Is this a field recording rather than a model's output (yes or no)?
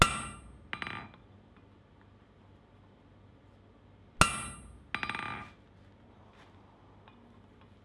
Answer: yes